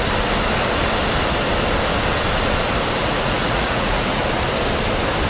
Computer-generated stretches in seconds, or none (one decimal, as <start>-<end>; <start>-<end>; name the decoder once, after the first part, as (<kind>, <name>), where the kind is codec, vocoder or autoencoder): 3.0-4.2 (vocoder, Vocos)